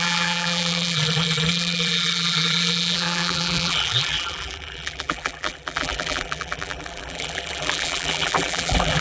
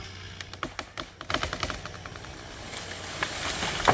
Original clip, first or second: second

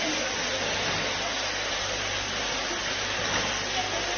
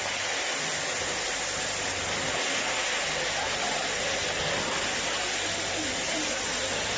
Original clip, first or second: first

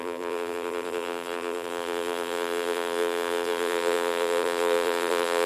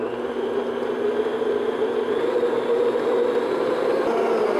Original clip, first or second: second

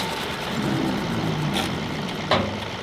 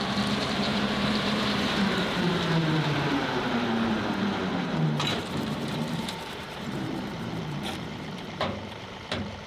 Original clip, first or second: first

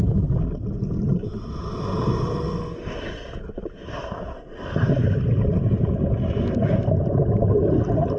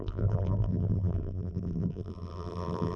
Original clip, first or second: first